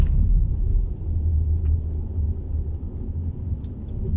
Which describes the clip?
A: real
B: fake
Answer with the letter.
A